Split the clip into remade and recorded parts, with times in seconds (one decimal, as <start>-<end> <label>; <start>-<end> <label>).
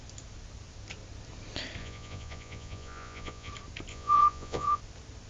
0.0-1.8 recorded; 1.8-3.5 remade; 3.5-3.9 recorded; 3.9-4.8 remade; 4.8-5.3 recorded